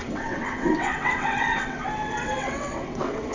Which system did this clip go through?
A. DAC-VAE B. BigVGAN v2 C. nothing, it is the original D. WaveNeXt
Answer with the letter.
D